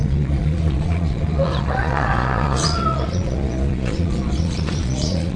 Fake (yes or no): yes